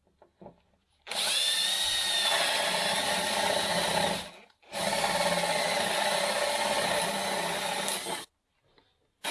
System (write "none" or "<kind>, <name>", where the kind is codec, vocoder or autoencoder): none